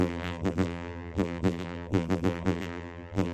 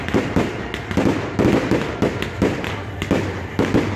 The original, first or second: second